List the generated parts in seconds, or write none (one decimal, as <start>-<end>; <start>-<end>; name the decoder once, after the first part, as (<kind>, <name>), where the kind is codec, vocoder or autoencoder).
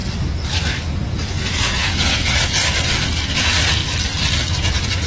1.3-2.6 (vocoder, Vocos); 3.3-3.8; 4.5-5.1